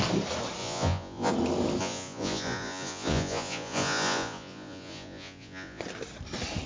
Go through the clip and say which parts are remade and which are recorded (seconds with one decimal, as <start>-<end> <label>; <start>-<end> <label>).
0.0-0.6 recorded; 0.6-1.3 remade; 1.3-1.8 recorded; 1.8-5.8 remade; 5.8-6.7 recorded